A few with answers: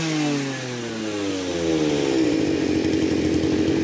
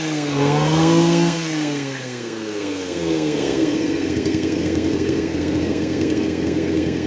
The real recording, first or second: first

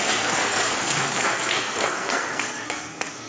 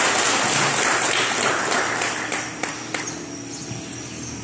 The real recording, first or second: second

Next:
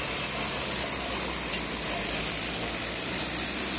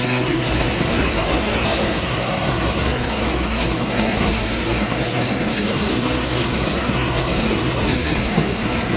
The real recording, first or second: first